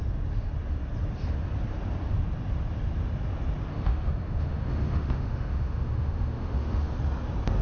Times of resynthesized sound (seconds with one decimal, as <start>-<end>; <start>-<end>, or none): 3.7-6.9